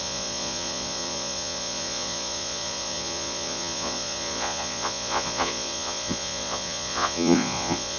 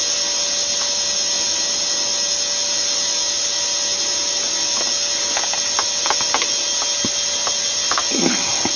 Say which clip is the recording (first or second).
second